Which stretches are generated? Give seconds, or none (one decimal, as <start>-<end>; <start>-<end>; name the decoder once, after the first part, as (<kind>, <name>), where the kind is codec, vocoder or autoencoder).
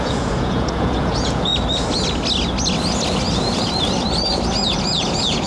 0.0-1.5 (vocoder, Vocos); 4.8-5.5